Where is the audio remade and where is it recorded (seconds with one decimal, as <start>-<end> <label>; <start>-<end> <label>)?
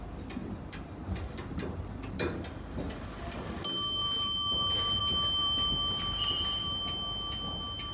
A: 0.0-0.4 recorded; 0.4-2.4 remade; 2.4-4.0 recorded; 4.0-5.0 remade; 5.0-5.4 recorded; 5.4-6.8 remade; 6.8-7.9 recorded